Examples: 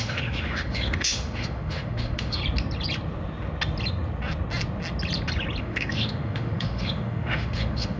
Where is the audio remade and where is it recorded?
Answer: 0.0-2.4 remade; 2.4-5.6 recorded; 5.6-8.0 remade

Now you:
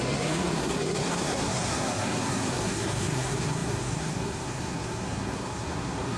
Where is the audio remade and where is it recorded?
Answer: 0.0-6.2 remade

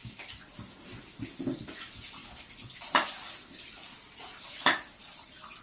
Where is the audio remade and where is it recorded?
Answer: 0.0-5.6 recorded

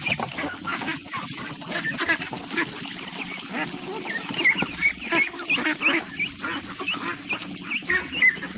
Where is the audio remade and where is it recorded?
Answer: 0.0-8.6 recorded

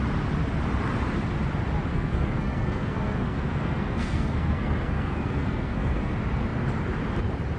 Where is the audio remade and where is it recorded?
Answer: 0.0-1.9 recorded; 1.9-6.1 remade; 6.1-7.6 recorded